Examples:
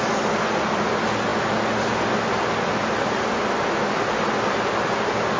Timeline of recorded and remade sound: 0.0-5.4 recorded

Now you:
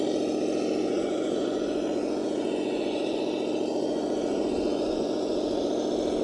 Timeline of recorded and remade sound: 0.0-0.8 recorded; 0.8-3.2 remade; 3.2-3.7 recorded; 3.7-5.7 remade; 5.7-6.2 recorded

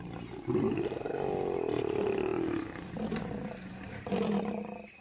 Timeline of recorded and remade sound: 0.0-5.0 recorded